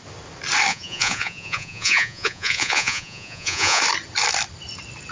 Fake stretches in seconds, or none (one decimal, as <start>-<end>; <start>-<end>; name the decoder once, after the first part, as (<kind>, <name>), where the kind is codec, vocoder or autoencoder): 0.7-3.8 (vocoder, Vocos)